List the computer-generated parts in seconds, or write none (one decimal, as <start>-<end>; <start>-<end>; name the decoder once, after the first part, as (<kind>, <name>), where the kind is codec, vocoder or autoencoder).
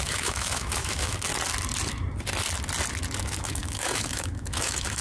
0.0-1.3 (autoencoder, DAC-VAE); 3.2-5.0